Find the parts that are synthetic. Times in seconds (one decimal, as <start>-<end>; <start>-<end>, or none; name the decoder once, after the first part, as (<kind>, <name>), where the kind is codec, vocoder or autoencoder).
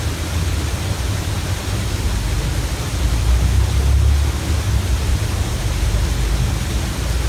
5.1-5.6 (vocoder, BigVGAN v2)